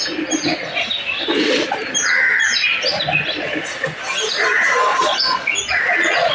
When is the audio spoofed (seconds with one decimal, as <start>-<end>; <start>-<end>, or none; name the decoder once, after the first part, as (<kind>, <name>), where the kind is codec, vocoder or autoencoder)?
4.9-6.3 (vocoder, Vocos)